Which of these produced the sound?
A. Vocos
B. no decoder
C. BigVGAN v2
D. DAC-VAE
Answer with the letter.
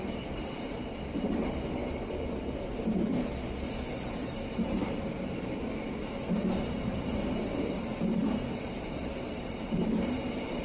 C